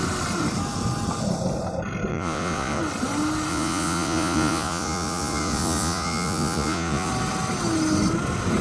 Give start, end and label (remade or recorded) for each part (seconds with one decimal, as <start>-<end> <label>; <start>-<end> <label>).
0.0-2.1 recorded; 2.1-2.8 remade; 2.8-3.5 recorded; 3.5-7.1 remade; 7.1-8.6 recorded